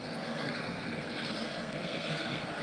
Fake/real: fake